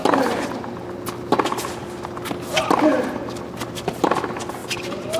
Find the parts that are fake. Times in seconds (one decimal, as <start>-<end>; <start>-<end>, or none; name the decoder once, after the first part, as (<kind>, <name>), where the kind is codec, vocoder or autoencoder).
4.6-5.2 (vocoder, BigVGAN v2)